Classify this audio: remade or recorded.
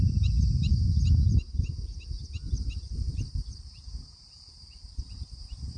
remade